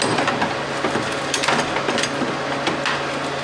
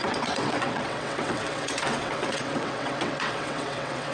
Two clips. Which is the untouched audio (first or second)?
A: first